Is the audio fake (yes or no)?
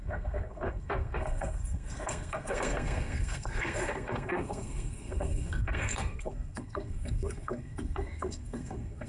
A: yes